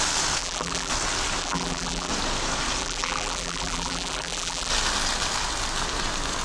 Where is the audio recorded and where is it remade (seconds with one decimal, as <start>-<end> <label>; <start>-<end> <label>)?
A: 0.0-0.4 recorded; 0.4-0.9 remade; 0.9-1.4 recorded; 1.4-2.1 remade; 2.1-2.8 recorded; 2.8-4.7 remade; 4.7-6.4 recorded